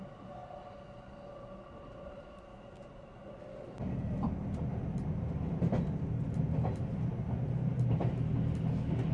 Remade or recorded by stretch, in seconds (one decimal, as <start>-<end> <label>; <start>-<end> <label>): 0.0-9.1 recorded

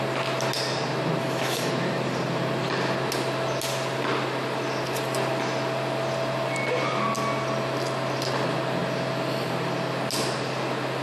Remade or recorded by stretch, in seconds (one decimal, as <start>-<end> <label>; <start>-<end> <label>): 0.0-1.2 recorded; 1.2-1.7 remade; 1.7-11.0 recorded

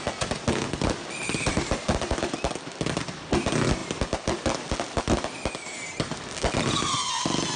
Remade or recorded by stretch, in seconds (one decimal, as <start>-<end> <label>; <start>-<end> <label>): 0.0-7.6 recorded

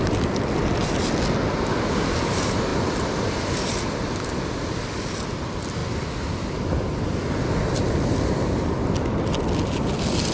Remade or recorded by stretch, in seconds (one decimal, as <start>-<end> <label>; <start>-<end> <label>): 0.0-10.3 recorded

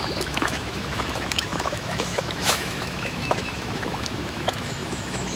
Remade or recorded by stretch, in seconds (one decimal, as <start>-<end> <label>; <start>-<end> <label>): 0.0-5.4 remade